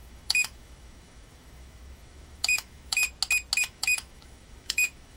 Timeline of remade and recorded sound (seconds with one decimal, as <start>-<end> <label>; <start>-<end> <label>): 0.0-3.0 remade; 3.0-3.6 recorded; 3.6-5.2 remade